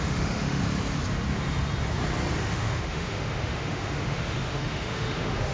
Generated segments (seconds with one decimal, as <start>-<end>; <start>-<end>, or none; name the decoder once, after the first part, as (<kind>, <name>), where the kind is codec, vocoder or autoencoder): 0.0-0.6 (autoencoder, DAC-VAE); 2.4-5.5